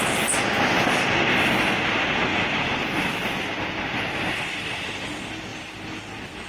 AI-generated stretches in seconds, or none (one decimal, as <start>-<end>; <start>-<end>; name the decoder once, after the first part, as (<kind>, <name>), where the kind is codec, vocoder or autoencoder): 2.3-4.7 (vocoder, BigVGAN v2); 5.5-6.0